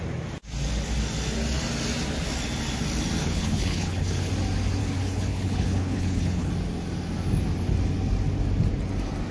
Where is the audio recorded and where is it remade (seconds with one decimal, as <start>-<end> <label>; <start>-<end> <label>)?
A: 0.0-3.2 recorded; 3.2-4.3 remade; 4.3-4.8 recorded; 4.8-6.5 remade; 6.5-9.3 recorded